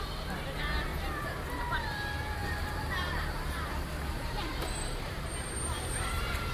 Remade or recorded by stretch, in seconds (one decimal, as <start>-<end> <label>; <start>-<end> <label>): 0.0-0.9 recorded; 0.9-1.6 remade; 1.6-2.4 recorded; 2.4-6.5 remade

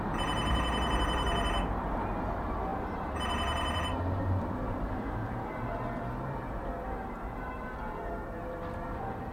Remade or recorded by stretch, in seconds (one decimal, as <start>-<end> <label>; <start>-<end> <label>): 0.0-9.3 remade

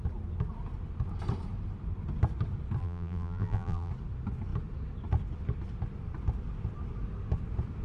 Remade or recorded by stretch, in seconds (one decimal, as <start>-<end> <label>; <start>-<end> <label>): 0.0-2.8 recorded; 2.8-3.9 remade; 3.9-7.8 recorded